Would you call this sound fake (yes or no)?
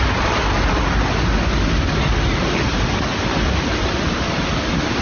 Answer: no